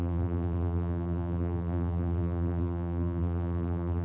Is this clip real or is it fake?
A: fake